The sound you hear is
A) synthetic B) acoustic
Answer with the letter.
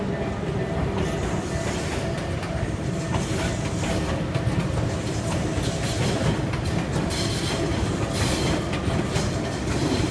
B